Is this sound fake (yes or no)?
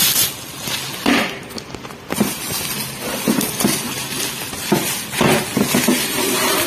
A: no